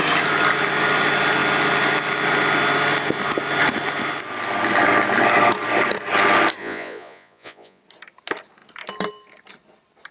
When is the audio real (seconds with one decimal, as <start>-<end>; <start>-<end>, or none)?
0.0-6.6; 7.8-10.1